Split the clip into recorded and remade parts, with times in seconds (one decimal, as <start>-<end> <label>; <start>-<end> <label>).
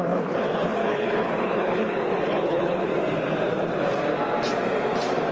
0.0-2.9 remade; 2.9-5.3 recorded